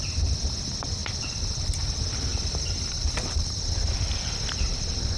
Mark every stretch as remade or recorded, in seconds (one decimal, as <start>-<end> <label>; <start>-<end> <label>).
0.0-1.0 recorded; 1.0-1.6 remade; 1.6-2.3 recorded; 2.3-5.2 remade